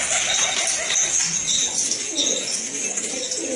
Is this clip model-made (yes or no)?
no